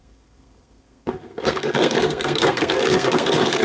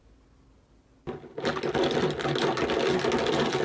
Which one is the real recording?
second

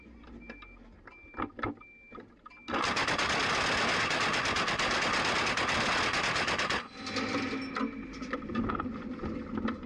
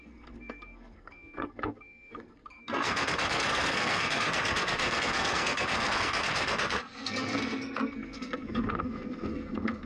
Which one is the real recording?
first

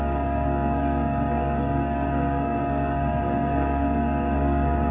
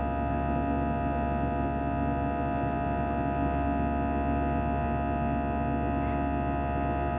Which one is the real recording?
second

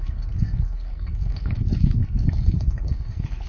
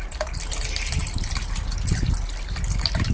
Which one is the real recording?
second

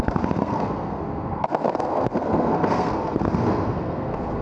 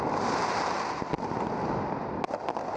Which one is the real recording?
second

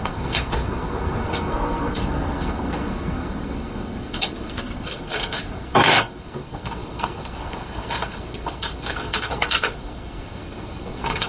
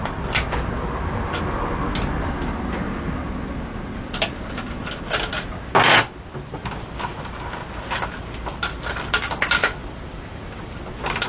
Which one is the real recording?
second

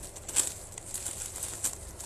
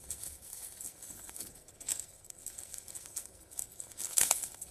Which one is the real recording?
first